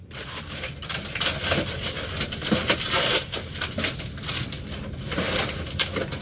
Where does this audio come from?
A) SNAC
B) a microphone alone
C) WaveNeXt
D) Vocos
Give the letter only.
B